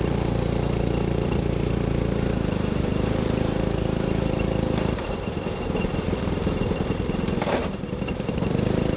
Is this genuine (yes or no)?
no